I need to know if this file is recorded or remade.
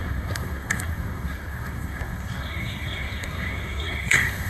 remade